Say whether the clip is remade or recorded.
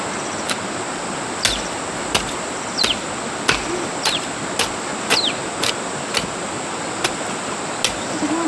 recorded